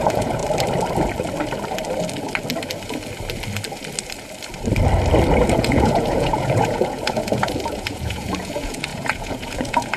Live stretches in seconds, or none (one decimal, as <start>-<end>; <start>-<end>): 0.4-5.4